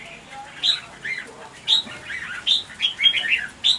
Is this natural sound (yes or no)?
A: yes